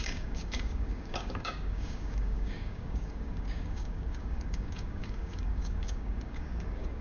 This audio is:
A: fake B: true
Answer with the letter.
A